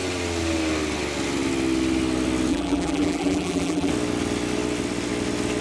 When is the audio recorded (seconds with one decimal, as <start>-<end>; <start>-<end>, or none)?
0.0-2.5; 3.9-5.6